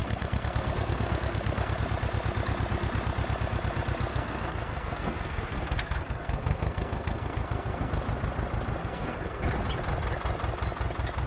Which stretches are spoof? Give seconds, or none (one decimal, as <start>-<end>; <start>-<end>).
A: 0.0-1.8; 4.1-7.9; 8.8-9.5